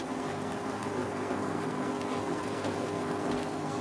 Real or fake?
fake